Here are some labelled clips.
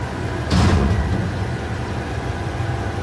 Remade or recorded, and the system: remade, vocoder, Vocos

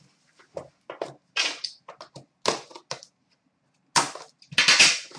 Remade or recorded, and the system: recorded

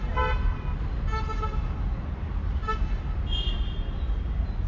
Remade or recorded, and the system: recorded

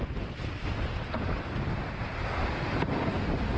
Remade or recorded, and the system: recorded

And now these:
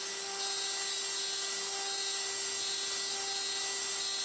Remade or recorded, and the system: recorded